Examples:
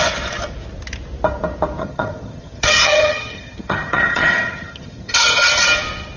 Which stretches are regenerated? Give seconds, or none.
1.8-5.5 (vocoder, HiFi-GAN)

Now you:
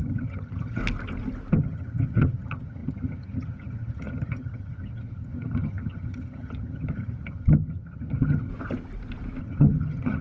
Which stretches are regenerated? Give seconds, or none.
0.0-0.8 (vocoder, HiFi-GAN); 1.5-8.5; 9.4-10.2

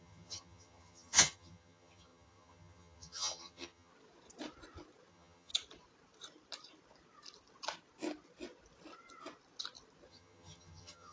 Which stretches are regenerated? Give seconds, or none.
0.0-3.9 (vocoder, HiFi-GAN); 5.1-5.5; 10.1-11.1

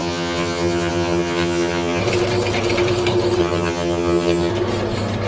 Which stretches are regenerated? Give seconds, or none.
0.0-2.0 (vocoder, HiFi-GAN); 3.4-4.5

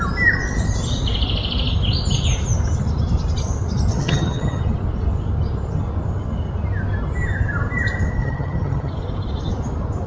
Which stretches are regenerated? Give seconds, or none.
3.9-4.6 (vocoder, HiFi-GAN); 8.2-8.9

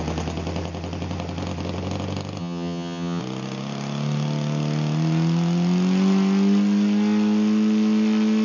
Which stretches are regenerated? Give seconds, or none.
2.4-3.2 (vocoder, HiFi-GAN)